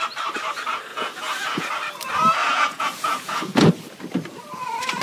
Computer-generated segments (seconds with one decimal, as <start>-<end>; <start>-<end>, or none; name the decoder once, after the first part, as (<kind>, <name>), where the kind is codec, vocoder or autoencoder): 0.9-1.7 (vocoder, Vocos); 2.4-3.7